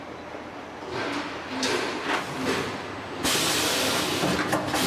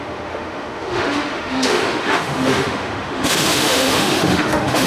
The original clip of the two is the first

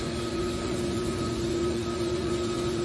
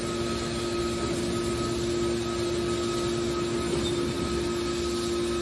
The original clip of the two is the second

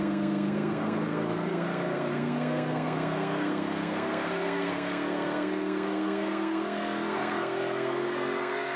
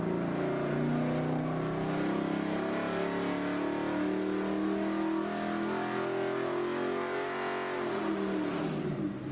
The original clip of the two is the second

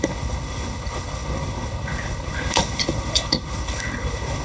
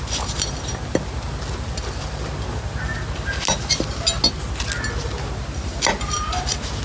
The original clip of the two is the second